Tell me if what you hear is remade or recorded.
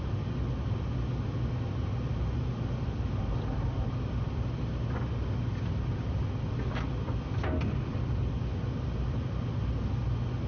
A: recorded